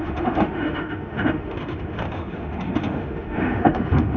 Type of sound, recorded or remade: remade